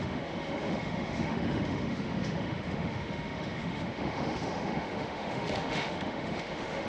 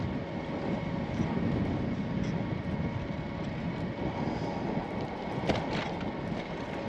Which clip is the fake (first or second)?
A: first